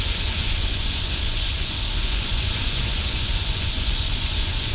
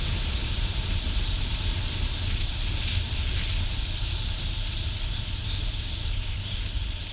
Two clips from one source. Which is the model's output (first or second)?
first